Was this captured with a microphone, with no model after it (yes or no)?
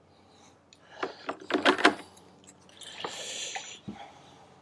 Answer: yes